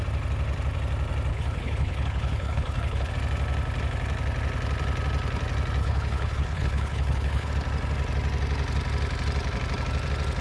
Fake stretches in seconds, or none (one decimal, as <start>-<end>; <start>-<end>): 1.3-3.1; 5.8-7.5